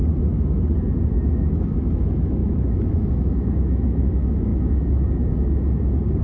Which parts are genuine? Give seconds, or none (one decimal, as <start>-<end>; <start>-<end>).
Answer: 0.0-1.1; 4.5-6.2